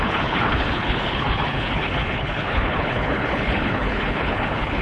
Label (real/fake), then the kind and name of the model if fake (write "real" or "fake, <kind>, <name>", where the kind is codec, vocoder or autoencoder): fake, codec, HILCodec